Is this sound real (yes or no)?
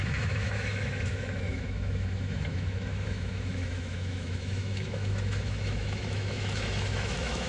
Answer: no